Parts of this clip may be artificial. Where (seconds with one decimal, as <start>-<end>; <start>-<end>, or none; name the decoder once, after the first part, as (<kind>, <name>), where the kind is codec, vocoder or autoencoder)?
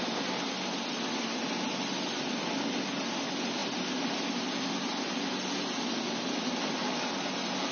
none